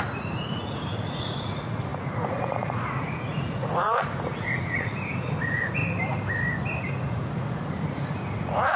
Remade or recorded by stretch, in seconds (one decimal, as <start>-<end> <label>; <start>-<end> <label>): 0.0-5.8 remade; 5.8-6.8 recorded; 6.8-8.8 remade